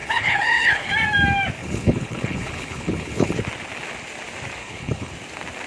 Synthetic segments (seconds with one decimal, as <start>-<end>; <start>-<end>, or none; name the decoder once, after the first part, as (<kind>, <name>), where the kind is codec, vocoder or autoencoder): 0.0-0.9 (codec, HILCodec); 1.6-3.4; 4.6-5.1